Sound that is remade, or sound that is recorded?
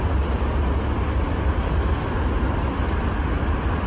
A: recorded